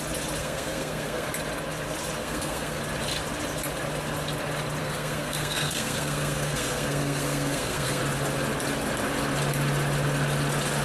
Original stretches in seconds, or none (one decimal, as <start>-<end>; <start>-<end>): 0.0-0.4; 1.3-2.2; 2.8-4.8; 8.0-10.8